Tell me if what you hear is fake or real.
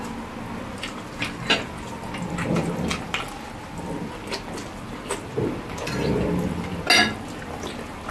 real